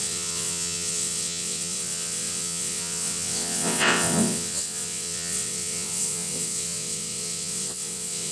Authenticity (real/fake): fake